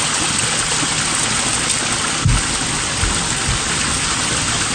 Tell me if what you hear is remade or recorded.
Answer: recorded